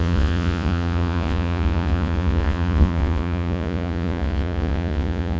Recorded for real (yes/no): no